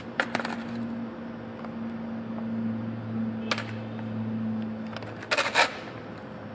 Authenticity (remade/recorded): recorded